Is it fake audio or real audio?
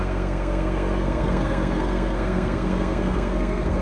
fake